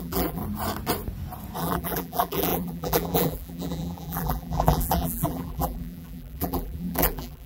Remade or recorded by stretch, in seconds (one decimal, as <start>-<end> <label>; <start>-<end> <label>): 0.0-0.4 remade; 0.4-1.6 recorded; 1.6-7.5 remade